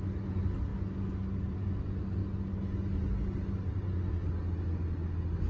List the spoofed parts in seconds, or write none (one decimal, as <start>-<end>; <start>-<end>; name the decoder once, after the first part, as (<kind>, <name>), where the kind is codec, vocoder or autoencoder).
none